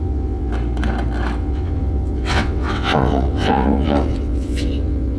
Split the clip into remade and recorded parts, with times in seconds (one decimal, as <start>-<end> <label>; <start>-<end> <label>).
0.0-0.5 remade; 0.5-1.4 recorded; 1.4-5.2 remade